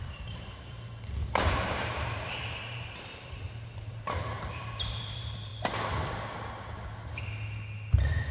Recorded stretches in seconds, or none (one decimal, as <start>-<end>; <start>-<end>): 5.5-8.3

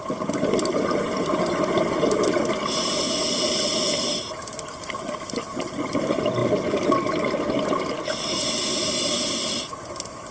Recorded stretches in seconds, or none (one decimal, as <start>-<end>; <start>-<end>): 0.0-10.3

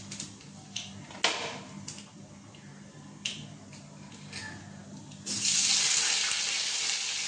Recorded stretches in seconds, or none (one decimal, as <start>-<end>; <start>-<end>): 0.0-7.3

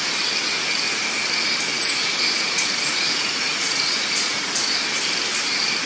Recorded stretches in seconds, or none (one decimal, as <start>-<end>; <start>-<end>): 0.0-1.7; 4.7-5.9